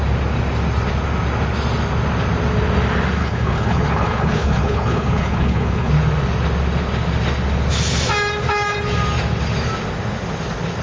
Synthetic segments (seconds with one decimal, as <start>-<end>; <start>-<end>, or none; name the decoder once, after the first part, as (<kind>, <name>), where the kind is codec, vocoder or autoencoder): 3.2-5.9 (codec, HILCodec)